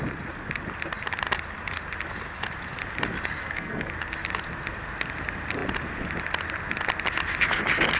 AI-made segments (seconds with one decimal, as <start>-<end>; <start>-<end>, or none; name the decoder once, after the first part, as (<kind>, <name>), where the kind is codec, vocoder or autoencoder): 3.4-3.9 (codec, SNAC)